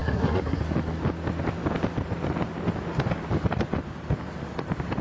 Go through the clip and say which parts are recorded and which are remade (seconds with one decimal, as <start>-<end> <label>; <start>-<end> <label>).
0.0-0.6 remade; 0.6-5.0 recorded